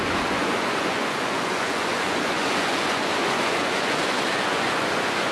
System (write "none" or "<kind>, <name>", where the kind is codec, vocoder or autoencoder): vocoder, Vocos